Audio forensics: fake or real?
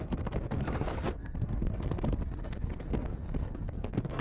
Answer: fake